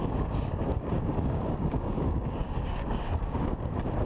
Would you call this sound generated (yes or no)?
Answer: yes